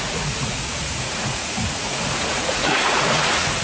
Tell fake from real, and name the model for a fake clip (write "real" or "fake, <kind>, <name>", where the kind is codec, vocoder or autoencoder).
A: fake, vocoder, Vocos